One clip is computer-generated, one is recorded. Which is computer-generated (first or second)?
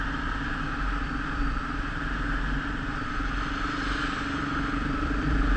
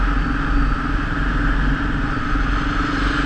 first